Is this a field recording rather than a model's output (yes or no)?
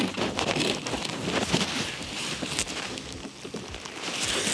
no